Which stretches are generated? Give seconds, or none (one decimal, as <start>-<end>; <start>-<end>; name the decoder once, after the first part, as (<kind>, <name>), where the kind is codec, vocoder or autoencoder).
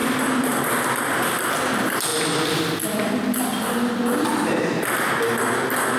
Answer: none